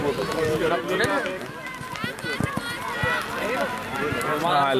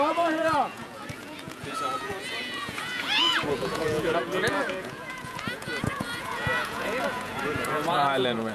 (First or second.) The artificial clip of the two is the second